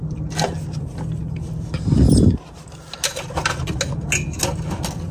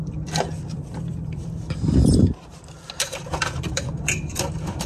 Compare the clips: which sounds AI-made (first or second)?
second